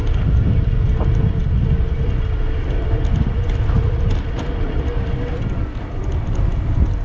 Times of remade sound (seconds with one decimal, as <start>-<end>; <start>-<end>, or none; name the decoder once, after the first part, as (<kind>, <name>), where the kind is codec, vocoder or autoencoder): none